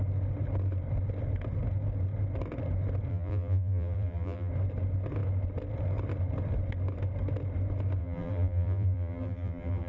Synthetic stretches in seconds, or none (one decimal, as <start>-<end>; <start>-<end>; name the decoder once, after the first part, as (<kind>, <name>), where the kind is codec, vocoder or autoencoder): 3.1-4.5 (vocoder, BigVGAN v2); 8.0-9.9